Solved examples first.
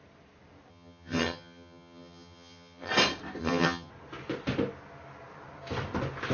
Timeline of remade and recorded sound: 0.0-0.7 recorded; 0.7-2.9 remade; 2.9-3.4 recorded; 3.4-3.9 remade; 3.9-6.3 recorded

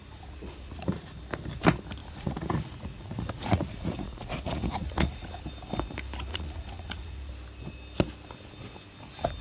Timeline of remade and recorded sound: 0.0-1.2 remade; 1.2-2.0 recorded; 2.0-5.4 remade; 5.4-6.3 recorded; 6.3-7.3 remade; 7.3-9.4 recorded

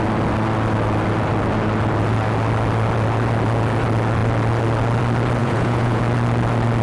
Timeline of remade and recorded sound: 0.0-5.4 recorded; 5.4-6.0 remade; 6.0-6.8 recorded

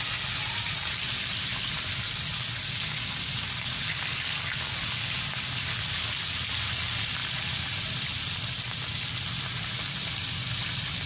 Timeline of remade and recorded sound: 0.0-7.2 recorded; 7.2-8.0 remade; 8.0-11.1 recorded

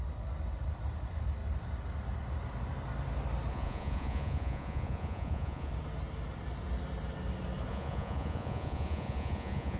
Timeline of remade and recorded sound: 0.0-3.5 recorded; 3.5-5.7 remade; 5.7-7.7 recorded; 7.7-9.8 remade

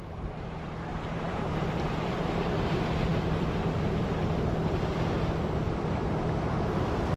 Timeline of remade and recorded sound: 0.0-3.1 remade; 3.1-6.4 recorded; 6.4-7.2 remade